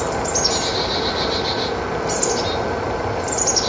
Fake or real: real